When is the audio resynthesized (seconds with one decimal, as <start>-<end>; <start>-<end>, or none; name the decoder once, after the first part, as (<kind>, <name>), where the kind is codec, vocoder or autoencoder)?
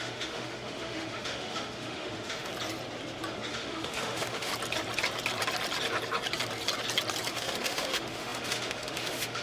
0.0-2.5 (autoencoder, DAC-VAE); 3.5-4.5; 7.3-9.4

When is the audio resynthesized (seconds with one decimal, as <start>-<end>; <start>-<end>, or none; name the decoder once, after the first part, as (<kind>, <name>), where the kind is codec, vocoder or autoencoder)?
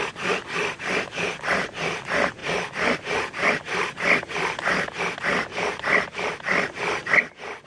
none